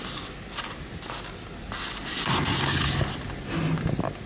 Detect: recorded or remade recorded